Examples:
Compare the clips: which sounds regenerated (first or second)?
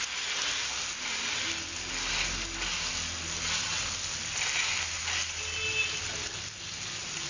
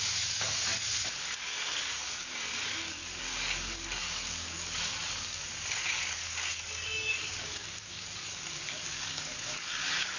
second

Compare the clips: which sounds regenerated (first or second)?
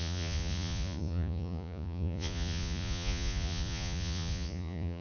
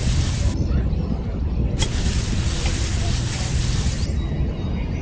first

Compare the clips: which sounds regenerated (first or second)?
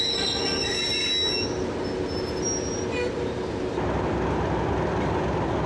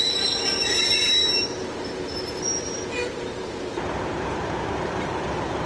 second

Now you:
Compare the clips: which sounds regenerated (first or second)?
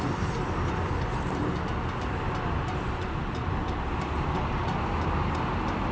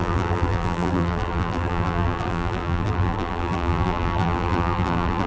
second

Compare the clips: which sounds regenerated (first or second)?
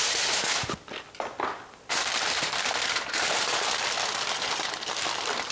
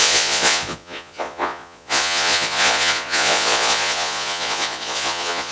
second